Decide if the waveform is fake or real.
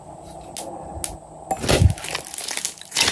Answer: real